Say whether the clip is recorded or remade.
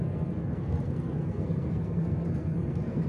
remade